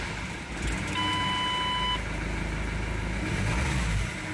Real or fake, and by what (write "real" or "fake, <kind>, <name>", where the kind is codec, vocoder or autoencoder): real